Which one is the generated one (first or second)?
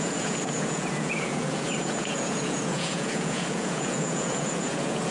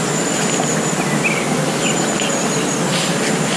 first